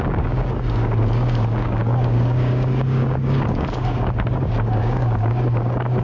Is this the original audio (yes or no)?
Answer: no